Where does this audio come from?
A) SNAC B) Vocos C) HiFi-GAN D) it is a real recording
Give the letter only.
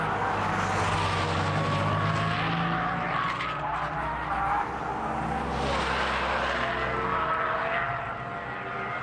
D